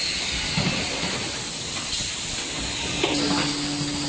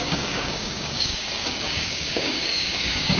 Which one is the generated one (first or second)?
second